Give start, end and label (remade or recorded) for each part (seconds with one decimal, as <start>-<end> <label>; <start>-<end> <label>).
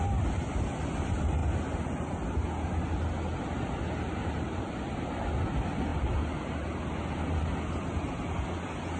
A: 0.0-9.0 recorded